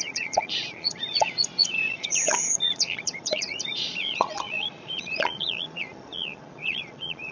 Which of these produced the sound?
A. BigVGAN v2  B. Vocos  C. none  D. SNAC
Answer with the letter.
B